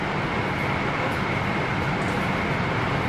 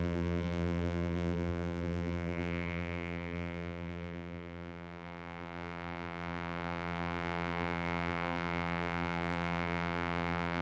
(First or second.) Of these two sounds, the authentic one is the first